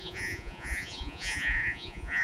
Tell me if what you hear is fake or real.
fake